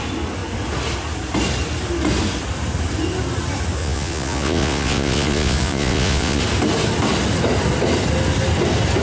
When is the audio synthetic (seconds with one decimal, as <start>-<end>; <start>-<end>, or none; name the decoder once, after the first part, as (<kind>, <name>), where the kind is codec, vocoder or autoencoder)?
3.8-6.4 (vocoder, Vocos)